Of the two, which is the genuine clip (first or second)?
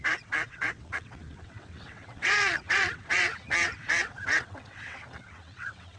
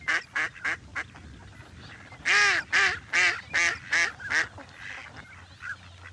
second